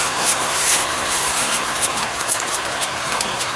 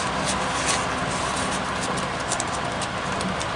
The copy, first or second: first